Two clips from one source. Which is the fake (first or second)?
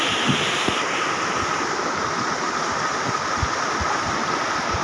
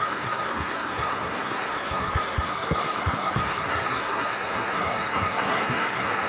second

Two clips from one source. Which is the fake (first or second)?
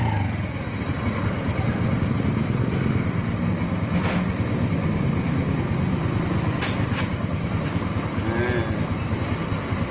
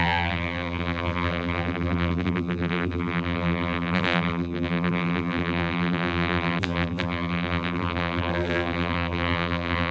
second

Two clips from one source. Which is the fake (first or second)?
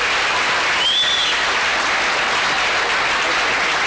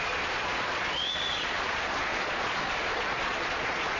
second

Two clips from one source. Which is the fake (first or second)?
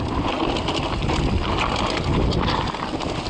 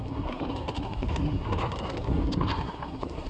second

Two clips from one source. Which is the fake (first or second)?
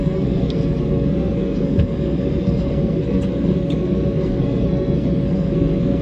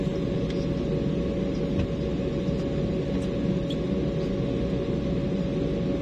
first